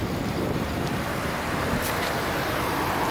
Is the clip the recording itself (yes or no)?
no